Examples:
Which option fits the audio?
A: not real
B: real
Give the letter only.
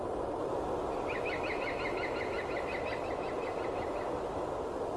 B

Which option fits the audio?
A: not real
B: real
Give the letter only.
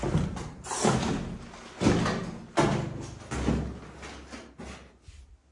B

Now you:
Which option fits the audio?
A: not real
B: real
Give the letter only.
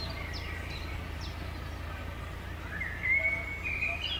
B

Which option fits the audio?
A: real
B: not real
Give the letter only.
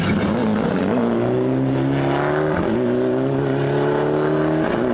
A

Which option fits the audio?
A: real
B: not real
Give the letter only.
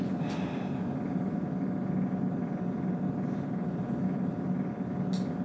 A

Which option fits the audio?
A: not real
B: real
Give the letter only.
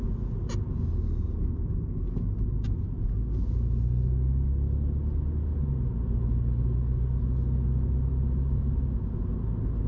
B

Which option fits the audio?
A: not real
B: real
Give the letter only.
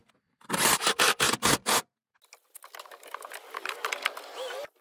B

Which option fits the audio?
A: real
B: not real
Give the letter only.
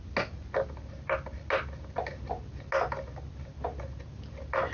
A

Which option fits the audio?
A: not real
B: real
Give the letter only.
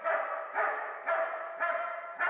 B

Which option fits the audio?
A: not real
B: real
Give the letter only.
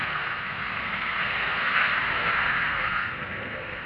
A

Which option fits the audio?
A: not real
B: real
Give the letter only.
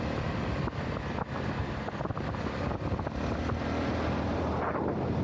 B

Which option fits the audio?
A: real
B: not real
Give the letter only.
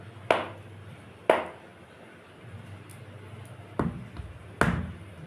A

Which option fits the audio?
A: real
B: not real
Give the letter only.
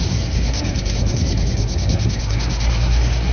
B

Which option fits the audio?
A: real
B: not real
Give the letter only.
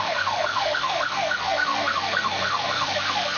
B